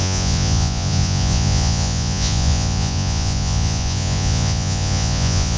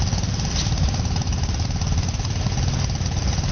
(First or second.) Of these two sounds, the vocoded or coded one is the first